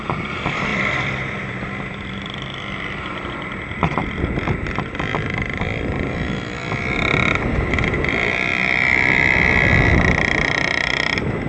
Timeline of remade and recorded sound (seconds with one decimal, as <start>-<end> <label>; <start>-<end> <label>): 0.0-0.7 recorded; 0.7-3.0 remade; 3.0-4.0 recorded; 4.0-6.1 remade; 6.1-8.5 recorded; 8.5-9.5 remade; 9.5-11.5 recorded